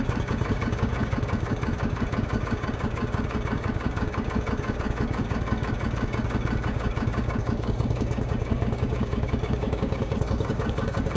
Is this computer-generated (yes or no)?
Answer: yes